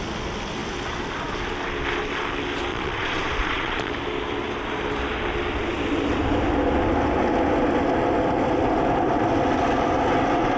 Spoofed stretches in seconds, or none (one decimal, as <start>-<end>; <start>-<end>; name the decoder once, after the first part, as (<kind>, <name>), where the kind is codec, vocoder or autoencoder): 2.7-3.9 (vocoder, Vocos)